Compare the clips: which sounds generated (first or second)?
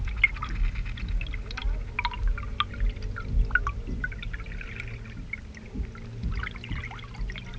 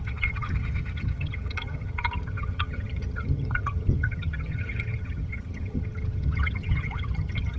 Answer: second